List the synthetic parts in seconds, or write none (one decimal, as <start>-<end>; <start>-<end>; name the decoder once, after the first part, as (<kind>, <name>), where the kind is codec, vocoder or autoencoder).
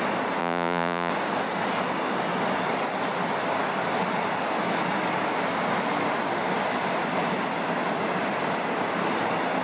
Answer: 0.4-1.1 (vocoder, Vocos)